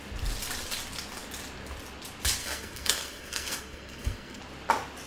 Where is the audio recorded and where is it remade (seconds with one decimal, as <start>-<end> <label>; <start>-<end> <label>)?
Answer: 0.0-2.4 recorded; 2.4-4.4 remade; 4.4-5.1 recorded